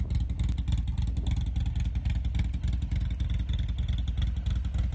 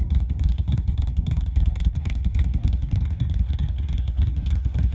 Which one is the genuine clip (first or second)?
first